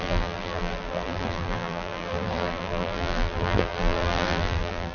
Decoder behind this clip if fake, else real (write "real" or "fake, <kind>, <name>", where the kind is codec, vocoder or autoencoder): fake, vocoder, BigVGAN v2